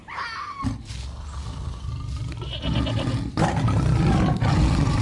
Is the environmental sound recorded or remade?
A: recorded